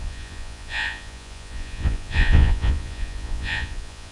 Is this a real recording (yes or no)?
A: no